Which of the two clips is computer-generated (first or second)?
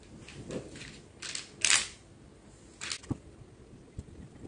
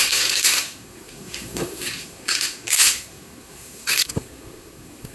second